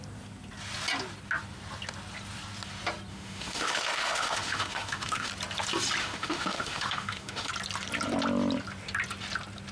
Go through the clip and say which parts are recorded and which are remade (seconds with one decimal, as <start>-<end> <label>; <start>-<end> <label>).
0.0-3.1 recorded; 3.1-5.3 remade; 5.3-6.0 recorded; 6.0-7.5 remade; 7.5-9.7 recorded

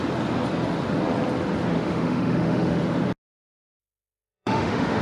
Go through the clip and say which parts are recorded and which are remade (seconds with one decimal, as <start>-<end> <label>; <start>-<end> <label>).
0.0-1.7 recorded; 1.7-2.8 remade; 2.8-3.8 recorded; 3.8-5.0 remade